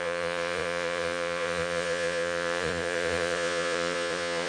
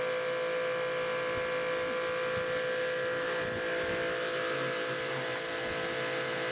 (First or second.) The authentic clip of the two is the second